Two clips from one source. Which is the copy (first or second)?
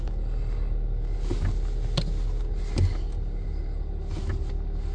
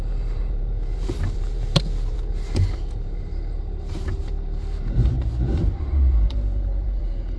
second